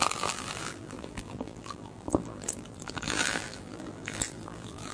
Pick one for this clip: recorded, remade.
remade